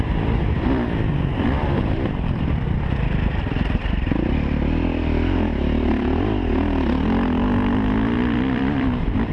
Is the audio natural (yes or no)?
no